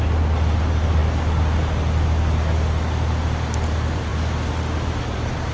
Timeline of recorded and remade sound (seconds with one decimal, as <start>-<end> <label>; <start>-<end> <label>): 0.0-5.5 recorded

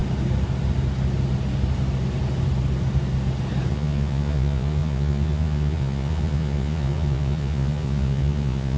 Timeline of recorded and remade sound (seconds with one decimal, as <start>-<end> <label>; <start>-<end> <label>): 0.0-3.7 recorded; 3.7-8.8 remade